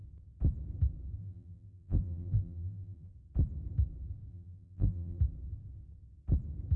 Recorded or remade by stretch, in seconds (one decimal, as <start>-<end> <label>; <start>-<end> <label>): 0.0-1.2 recorded; 1.2-3.1 remade; 3.1-4.3 recorded; 4.3-5.2 remade; 5.2-6.8 recorded